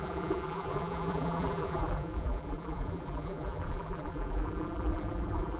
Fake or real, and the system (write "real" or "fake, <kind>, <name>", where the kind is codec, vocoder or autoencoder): fake, vocoder, BigVGAN v2